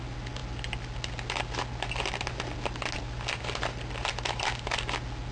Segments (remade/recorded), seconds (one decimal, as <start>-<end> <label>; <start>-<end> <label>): 0.0-5.3 recorded